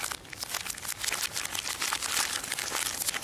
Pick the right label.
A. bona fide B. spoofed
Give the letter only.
A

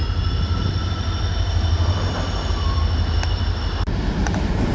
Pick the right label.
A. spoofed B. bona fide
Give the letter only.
B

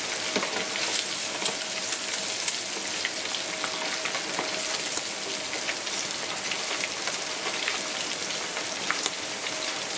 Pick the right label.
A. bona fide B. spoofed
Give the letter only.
A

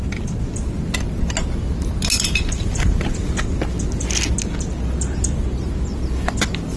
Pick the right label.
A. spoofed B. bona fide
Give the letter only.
B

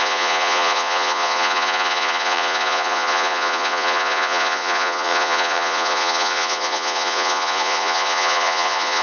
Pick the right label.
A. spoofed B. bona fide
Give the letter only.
A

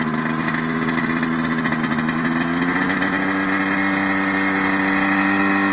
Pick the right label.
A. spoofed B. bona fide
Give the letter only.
B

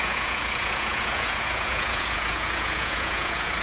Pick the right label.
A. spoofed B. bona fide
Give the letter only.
A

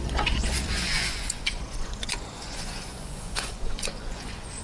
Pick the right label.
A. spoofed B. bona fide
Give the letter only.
A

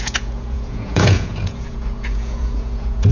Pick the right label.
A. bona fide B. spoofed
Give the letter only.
B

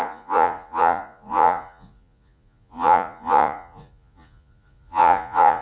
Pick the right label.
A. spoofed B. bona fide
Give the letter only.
A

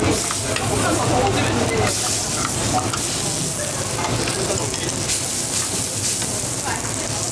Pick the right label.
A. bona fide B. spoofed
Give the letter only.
A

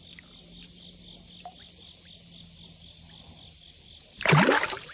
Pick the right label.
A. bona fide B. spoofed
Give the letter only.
A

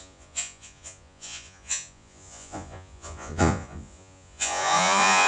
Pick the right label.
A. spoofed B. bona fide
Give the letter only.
A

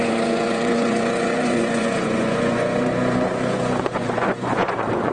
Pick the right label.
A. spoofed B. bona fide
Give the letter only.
A